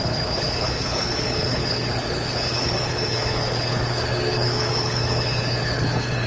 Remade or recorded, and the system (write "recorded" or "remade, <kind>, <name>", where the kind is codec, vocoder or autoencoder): remade, codec, HILCodec